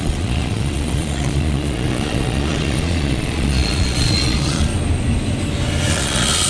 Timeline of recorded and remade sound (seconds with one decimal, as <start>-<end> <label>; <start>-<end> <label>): 0.0-4.7 remade; 4.7-5.9 recorded; 5.9-6.5 remade